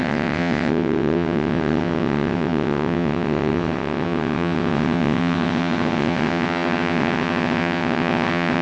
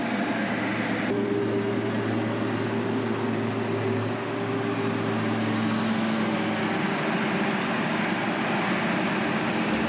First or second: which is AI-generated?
first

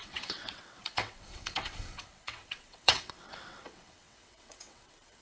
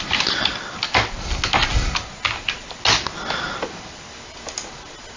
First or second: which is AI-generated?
first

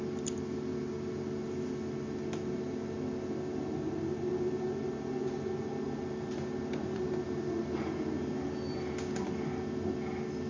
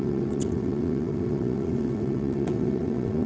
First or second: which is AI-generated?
second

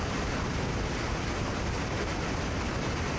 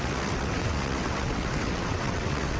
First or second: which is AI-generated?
second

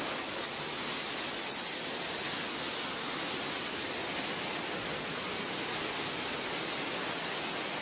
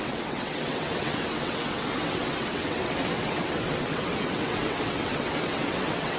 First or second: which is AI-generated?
second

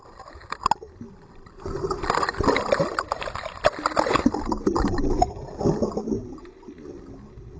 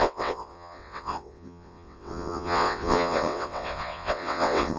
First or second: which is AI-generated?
second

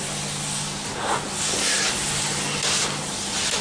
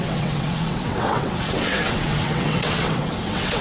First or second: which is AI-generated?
second